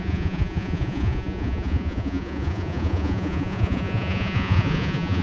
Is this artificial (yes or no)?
yes